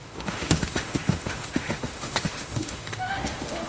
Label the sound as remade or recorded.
remade